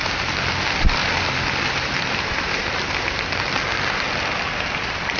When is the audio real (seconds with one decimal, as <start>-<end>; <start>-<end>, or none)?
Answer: 1.0-1.7